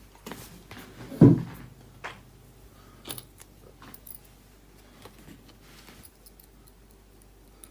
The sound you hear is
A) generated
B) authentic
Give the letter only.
B